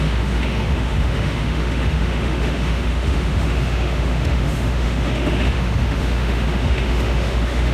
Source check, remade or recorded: remade